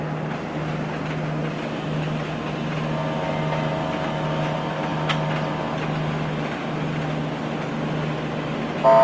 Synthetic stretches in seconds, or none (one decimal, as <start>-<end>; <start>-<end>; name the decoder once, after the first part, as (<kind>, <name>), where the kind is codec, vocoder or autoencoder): none